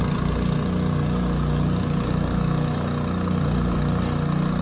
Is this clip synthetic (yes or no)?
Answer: no